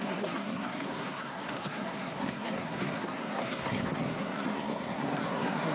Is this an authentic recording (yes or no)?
no